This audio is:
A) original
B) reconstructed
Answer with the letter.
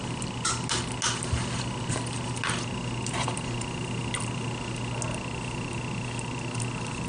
A